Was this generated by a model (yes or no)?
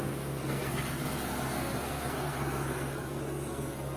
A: yes